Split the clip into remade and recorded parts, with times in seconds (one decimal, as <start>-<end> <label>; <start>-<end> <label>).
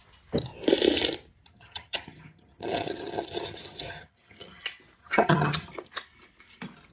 0.0-1.5 recorded; 1.5-4.6 remade; 4.6-5.0 recorded; 5.0-5.7 remade; 5.7-6.9 recorded